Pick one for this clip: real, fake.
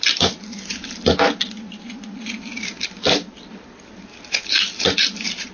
real